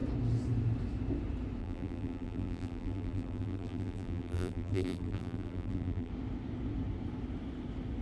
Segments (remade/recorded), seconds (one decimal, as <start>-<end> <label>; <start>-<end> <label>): 0.0-1.6 recorded; 1.6-6.1 remade; 6.1-8.0 recorded